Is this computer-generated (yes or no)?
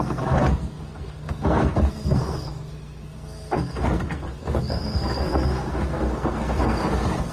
yes